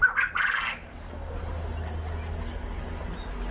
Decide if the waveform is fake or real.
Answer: real